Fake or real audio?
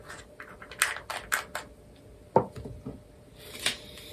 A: real